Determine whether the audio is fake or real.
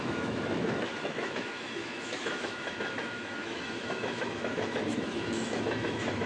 fake